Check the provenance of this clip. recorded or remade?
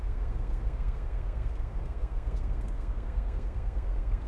remade